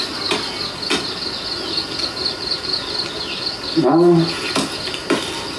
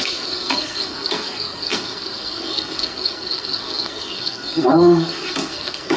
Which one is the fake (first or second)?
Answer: second